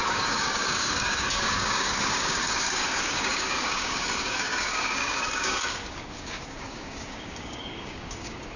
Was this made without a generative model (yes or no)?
no